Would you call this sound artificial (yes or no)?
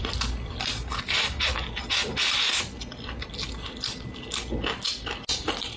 no